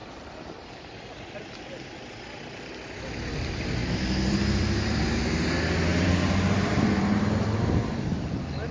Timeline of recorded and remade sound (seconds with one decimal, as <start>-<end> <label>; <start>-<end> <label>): 0.0-3.8 recorded; 3.8-5.0 remade; 5.0-5.9 recorded; 5.9-7.5 remade; 7.5-8.7 recorded